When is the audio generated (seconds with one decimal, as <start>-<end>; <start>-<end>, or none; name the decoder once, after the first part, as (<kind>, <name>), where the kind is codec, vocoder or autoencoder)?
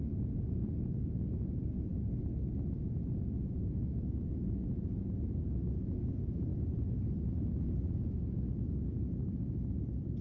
0.0-1.9 (vocoder, Vocos); 2.8-6.5